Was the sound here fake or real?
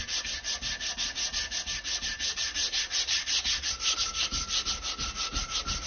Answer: real